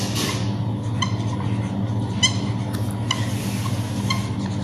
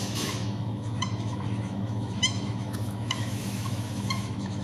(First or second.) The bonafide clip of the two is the first